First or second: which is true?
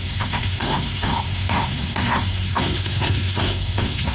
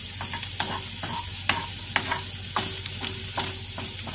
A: second